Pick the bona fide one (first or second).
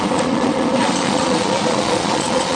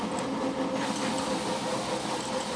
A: second